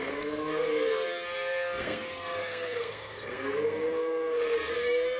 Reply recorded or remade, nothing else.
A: remade